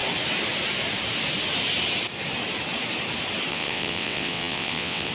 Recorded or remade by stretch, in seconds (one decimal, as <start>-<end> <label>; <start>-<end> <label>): 0.0-3.5 recorded; 3.5-5.1 remade